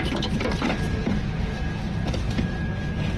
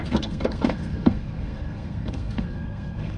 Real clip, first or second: first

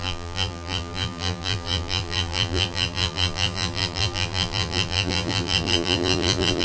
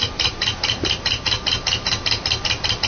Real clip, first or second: second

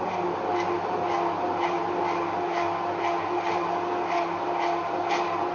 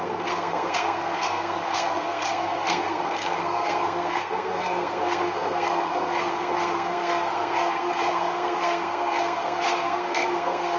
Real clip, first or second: first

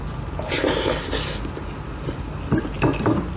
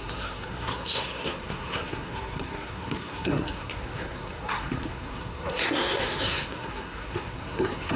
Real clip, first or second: first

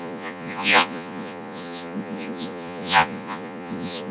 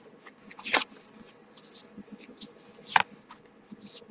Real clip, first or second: second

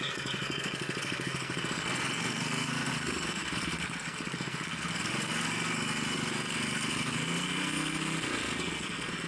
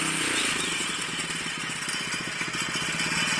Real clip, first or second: second